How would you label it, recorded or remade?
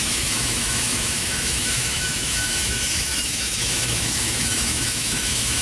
remade